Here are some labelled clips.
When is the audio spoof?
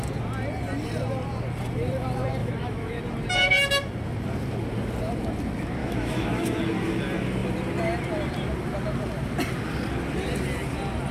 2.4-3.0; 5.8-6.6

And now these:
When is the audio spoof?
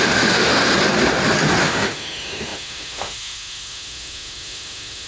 0.0-0.7; 1.6-5.1